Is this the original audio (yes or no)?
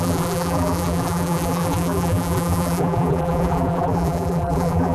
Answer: no